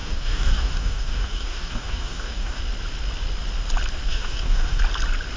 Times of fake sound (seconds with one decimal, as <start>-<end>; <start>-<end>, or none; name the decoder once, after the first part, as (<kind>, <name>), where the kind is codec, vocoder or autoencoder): 0.0-2.6 (codec, DAC); 4.1-4.8